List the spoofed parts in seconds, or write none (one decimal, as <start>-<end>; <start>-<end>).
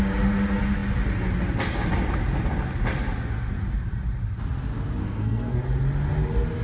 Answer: 5.0-5.6